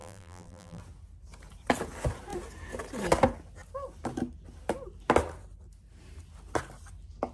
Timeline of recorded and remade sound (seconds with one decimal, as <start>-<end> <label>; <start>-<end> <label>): 0.0-0.8 remade; 0.8-7.3 recorded